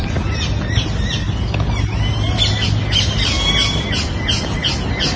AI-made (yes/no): no